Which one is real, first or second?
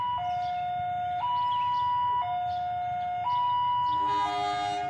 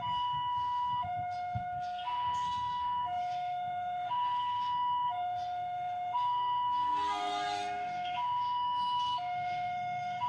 first